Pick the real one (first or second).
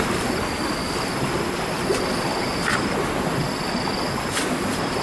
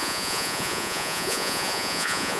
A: first